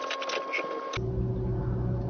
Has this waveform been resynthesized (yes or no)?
no